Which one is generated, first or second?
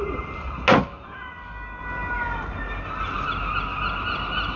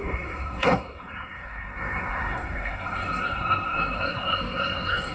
second